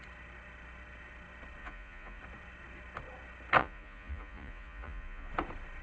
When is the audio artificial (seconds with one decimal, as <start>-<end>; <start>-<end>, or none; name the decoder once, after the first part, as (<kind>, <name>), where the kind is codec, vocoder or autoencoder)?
1.6-2.2 (vocoder, Vocos); 3.6-5.3